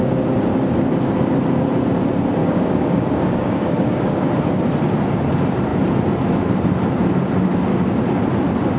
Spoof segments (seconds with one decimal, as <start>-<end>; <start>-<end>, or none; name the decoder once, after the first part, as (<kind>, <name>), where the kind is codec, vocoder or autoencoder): 2.4-4.3 (codec, DAC); 7.7-8.2